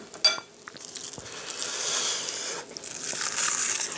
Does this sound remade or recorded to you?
recorded